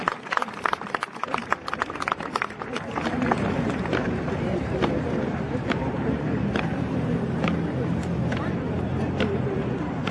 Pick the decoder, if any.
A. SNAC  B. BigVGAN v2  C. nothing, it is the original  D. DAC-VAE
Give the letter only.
B